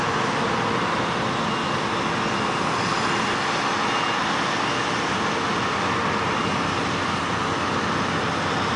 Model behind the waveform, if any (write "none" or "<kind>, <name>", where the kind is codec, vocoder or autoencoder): none